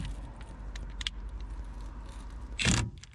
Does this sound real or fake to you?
real